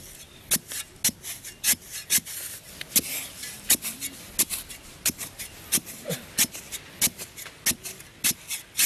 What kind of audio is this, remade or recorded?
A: recorded